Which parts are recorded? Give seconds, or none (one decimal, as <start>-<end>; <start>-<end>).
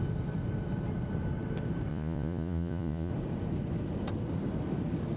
0.0-1.9; 3.1-5.2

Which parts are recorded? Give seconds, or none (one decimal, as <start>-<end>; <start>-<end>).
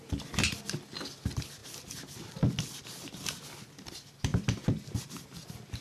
0.0-5.8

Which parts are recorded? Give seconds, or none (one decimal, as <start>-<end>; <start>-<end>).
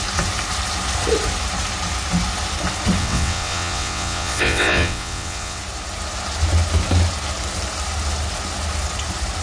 0.0-3.0; 5.6-9.4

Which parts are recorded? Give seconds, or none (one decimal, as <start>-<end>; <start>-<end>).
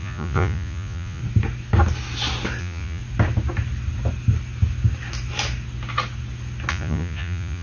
1.2-2.6; 3.0-6.7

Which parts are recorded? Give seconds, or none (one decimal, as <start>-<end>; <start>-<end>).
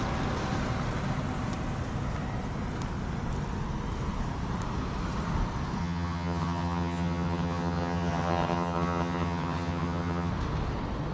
0.0-5.8; 10.3-11.1